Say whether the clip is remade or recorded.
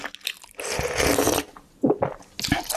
recorded